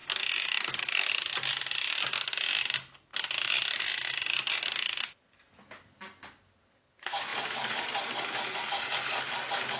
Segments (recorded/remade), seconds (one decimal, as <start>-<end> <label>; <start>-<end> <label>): 0.0-9.8 recorded